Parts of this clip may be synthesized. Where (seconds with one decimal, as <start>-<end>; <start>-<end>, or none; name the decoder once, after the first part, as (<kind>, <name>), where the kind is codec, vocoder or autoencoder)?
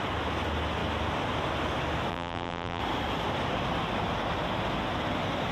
2.1-2.8 (vocoder, BigVGAN v2)